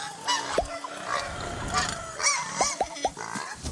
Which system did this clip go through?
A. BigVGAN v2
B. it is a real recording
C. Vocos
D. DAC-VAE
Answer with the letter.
B